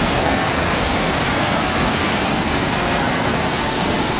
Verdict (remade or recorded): remade